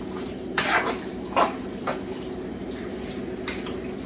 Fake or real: real